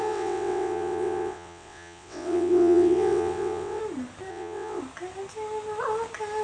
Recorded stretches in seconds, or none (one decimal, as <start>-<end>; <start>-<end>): 3.8-4.3; 4.8-6.4